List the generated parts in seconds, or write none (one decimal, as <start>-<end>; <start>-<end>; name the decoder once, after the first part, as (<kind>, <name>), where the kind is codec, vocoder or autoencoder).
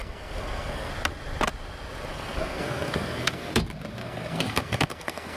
0.0-0.9 (codec, SNAC); 2.1-3.6; 4.0-5.4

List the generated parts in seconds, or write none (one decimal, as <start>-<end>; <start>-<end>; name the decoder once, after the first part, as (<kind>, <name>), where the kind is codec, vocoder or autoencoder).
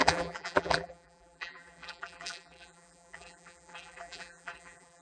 0.0-5.0 (vocoder, BigVGAN v2)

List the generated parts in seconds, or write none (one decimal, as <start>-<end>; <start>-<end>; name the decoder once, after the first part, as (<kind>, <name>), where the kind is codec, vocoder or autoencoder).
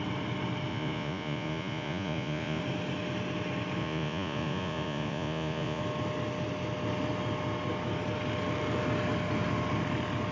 0.7-2.6 (vocoder, Vocos); 3.8-5.8